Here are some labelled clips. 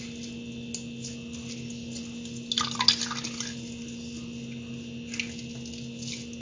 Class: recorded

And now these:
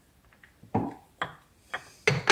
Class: recorded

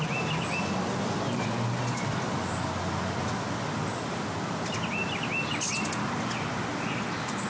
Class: recorded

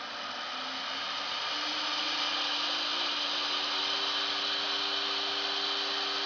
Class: recorded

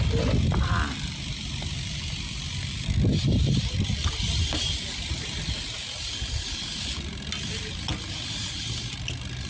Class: recorded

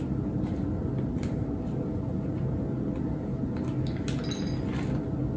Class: recorded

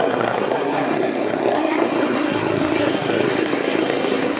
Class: remade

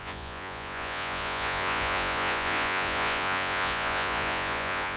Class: remade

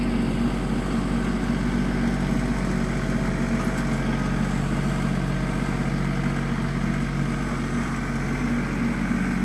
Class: recorded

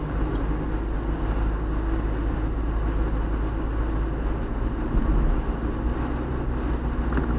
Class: recorded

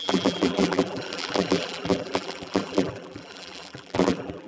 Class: remade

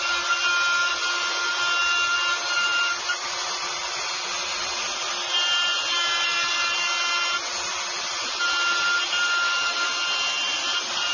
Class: recorded